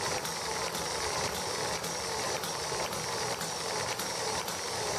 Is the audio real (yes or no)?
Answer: no